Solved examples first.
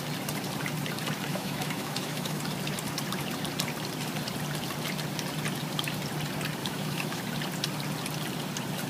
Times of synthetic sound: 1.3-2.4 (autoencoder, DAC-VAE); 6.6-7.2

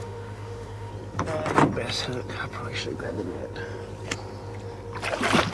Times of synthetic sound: 0.0-0.9 (autoencoder, DAC-VAE); 3.0-3.4

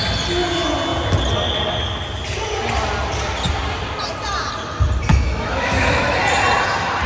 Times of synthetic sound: 5.1-6.2 (autoencoder, DAC-VAE)